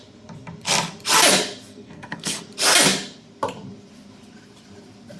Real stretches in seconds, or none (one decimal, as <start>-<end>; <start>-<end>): 0.0-1.7; 2.4-5.2